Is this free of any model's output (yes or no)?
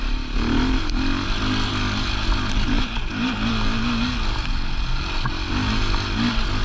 yes